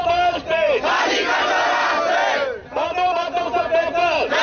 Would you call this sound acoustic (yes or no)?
yes